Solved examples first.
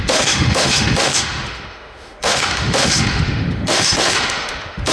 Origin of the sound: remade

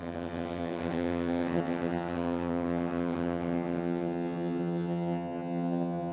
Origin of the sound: remade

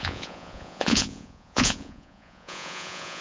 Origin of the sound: remade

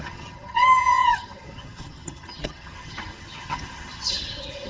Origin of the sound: remade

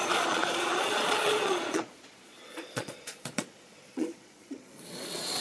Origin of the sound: remade